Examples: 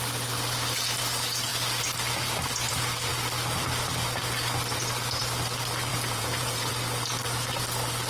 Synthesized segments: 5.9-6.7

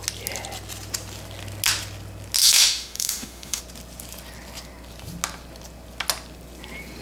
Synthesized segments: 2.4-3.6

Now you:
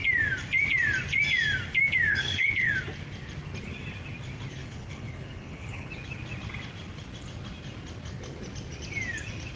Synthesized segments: 2.1-2.7; 4.6-5.9

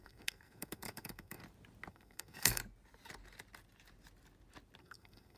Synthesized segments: 0.0-1.4; 1.9-2.6; 4.8-5.4

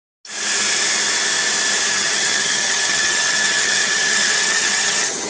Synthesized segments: 1.9-5.3

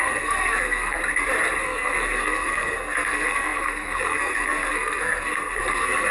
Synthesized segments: 0.0-1.0; 1.6-6.1

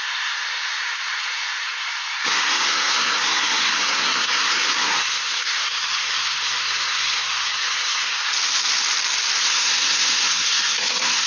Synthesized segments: 0.0-8.3; 9.4-11.3

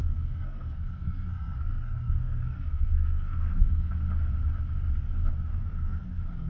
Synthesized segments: 0.0-3.9; 5.5-6.5